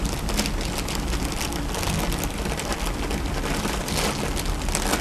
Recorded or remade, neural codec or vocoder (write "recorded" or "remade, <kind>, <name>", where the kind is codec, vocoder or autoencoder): recorded